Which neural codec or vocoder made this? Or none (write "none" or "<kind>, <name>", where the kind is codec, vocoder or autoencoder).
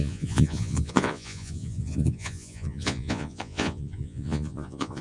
vocoder, Vocos